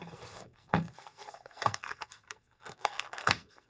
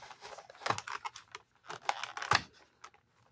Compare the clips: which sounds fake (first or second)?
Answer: first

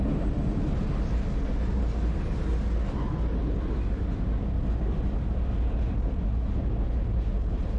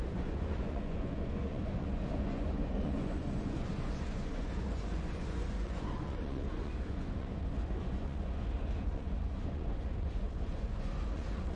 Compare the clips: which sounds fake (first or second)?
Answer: second